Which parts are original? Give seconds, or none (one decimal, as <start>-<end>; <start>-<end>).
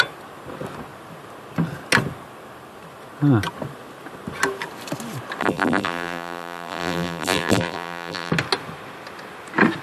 0.0-5.4; 8.3-9.8